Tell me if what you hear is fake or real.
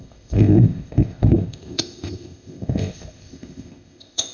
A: fake